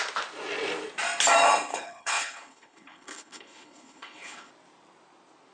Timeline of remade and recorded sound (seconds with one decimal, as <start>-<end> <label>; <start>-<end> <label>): 0.0-1.7 recorded; 1.7-4.5 remade; 4.5-5.5 recorded